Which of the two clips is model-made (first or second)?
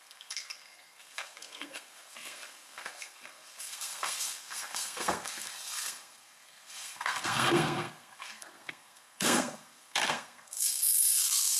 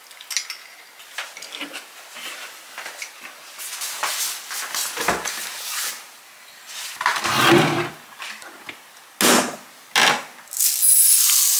first